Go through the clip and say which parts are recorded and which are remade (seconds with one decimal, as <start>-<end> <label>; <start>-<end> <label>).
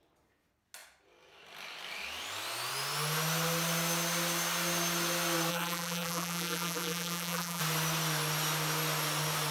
0.0-5.5 recorded; 5.5-7.6 remade; 7.6-9.5 recorded